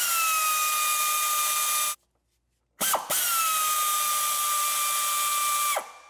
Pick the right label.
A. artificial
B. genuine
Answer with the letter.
B